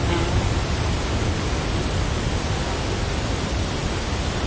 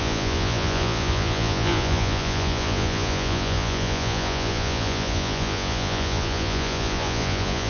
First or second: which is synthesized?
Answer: second